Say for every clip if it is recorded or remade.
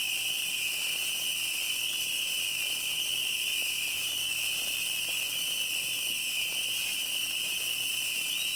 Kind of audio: recorded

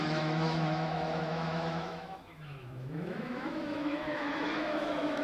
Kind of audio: remade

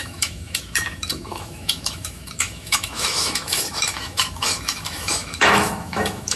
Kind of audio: remade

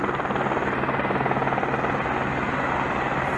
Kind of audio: recorded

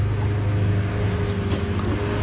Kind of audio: recorded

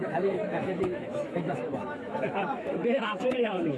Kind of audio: remade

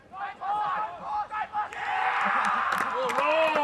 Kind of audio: recorded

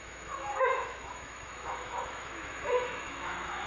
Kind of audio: remade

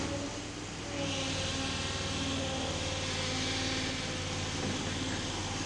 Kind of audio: recorded